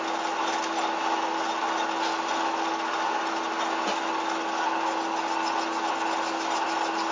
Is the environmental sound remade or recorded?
recorded